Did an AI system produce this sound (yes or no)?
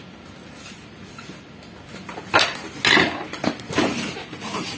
no